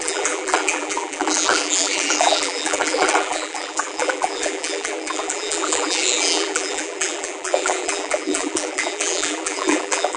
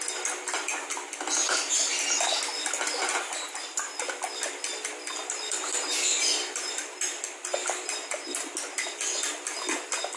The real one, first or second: second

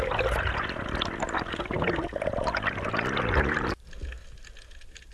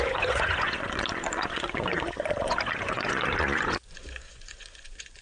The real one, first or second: first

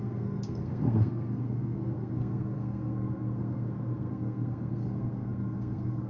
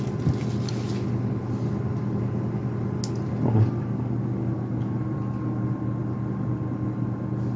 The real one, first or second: second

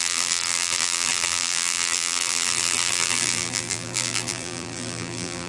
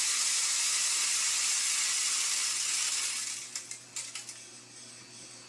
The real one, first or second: second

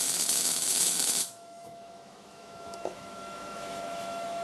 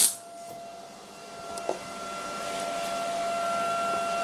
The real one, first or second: second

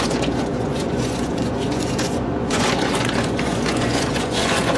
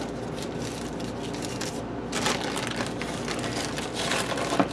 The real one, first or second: second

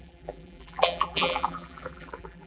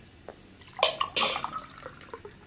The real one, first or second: second